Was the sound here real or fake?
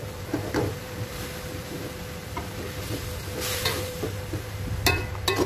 real